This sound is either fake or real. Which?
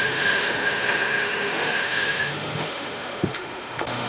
fake